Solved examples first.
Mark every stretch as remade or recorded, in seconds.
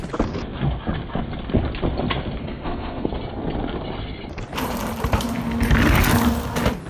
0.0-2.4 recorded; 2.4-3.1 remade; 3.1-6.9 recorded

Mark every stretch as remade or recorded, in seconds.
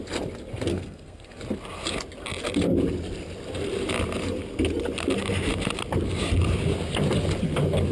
0.0-0.7 recorded; 0.7-1.4 remade; 1.4-7.9 recorded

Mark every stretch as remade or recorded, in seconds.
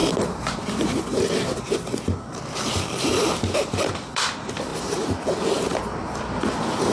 0.0-1.1 recorded; 1.1-6.9 remade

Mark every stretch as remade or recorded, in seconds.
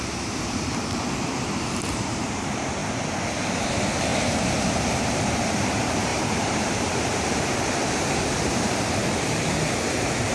0.0-2.8 remade; 2.8-3.6 recorded; 3.6-4.1 remade; 4.1-4.7 recorded; 4.7-10.3 remade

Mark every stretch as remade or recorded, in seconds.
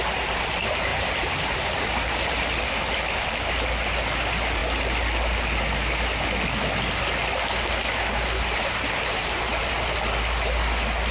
0.0-0.9 recorded; 0.9-2.5 remade; 2.5-9.2 recorded; 9.2-9.7 remade; 9.7-11.1 recorded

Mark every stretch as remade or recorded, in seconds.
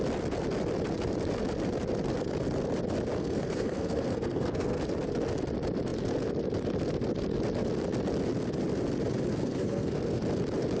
0.0-3.2 recorded; 3.2-4.8 remade; 4.8-9.4 recorded; 9.4-10.2 remade; 10.2-10.8 recorded